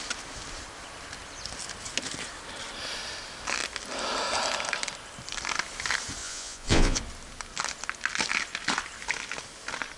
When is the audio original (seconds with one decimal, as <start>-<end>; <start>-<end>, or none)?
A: 0.0-6.2; 7.0-10.0